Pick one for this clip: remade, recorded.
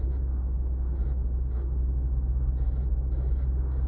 recorded